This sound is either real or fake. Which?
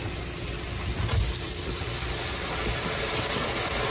real